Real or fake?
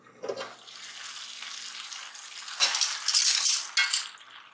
real